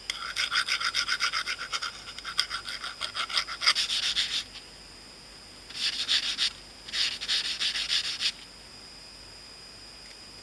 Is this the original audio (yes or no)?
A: yes